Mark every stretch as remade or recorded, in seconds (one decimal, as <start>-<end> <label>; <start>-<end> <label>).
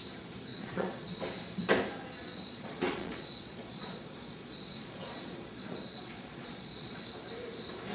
0.0-0.5 recorded; 0.5-1.2 remade; 1.2-2.3 recorded; 2.3-7.0 remade; 7.0-7.9 recorded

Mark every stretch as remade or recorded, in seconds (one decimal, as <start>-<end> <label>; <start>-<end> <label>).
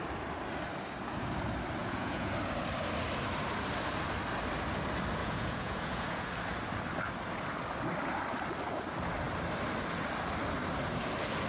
0.0-1.8 recorded; 1.8-2.3 remade; 2.3-5.2 recorded; 5.2-6.3 remade; 6.3-11.5 recorded